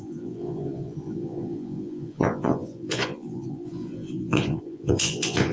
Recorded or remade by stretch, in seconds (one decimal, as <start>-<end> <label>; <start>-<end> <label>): 0.0-5.5 remade